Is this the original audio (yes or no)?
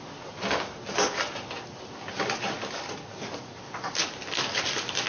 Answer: yes